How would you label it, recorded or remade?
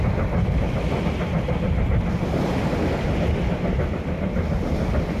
recorded